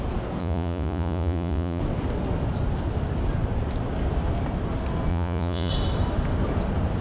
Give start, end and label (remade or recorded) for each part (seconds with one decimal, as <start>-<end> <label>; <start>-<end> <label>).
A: 0.0-0.4 recorded; 0.4-1.8 remade; 1.8-5.1 recorded; 5.1-5.7 remade; 5.7-7.0 recorded